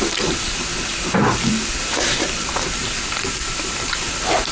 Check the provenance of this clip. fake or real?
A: real